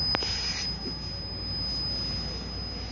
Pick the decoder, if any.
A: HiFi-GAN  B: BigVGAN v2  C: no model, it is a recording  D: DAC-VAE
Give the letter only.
C